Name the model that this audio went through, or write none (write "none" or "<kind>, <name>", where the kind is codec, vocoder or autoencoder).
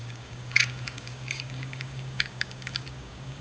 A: codec, DAC